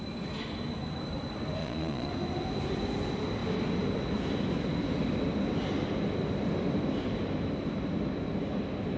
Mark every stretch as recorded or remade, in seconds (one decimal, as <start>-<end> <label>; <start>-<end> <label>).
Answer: 0.0-1.6 recorded; 1.6-2.1 remade; 2.1-9.0 recorded